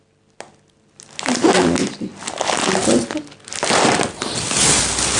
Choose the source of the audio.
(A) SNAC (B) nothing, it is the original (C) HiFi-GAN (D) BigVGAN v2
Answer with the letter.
B